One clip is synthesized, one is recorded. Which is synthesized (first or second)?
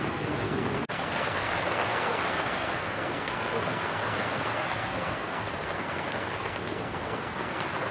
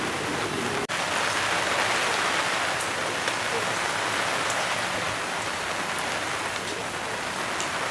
first